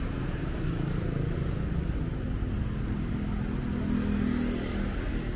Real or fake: real